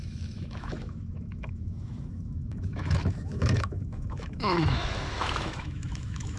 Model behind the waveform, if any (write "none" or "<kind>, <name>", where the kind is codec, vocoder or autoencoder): autoencoder, DAC-VAE